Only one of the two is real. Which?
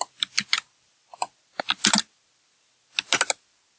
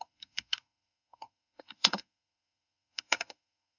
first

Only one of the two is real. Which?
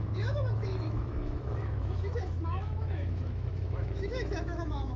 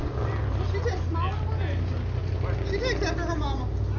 second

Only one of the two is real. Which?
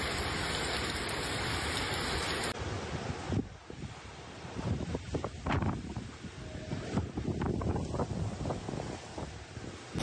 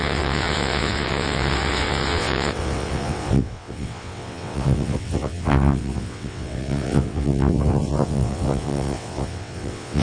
first